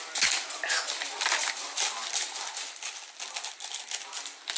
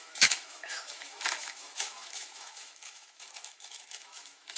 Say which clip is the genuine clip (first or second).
first